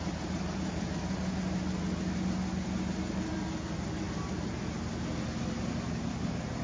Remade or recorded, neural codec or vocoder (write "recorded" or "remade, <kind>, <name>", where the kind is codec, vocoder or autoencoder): recorded